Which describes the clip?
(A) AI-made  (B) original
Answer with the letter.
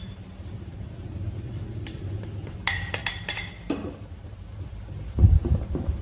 A